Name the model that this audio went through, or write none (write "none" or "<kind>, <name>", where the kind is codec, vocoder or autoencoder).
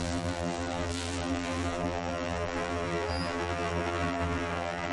vocoder, BigVGAN v2